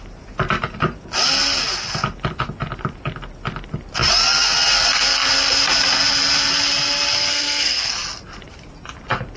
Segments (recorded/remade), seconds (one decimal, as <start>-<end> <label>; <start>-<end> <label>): 0.0-7.3 recorded; 7.3-7.9 remade; 7.9-9.4 recorded